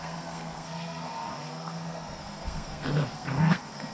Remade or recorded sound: remade